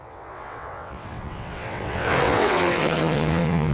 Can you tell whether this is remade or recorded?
remade